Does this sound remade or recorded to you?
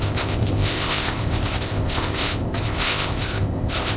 remade